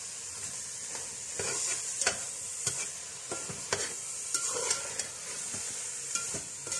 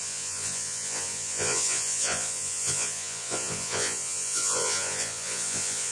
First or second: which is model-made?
second